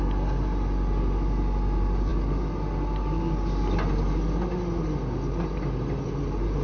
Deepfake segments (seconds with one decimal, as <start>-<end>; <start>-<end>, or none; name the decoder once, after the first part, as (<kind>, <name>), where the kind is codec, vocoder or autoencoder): none